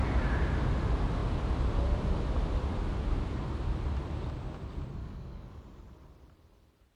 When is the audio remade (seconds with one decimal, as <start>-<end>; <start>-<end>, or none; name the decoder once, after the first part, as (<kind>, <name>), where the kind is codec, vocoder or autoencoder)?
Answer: 5.0-5.6 (codec, DAC)